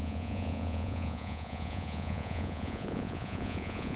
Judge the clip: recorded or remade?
remade